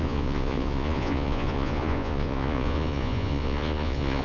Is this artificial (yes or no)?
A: yes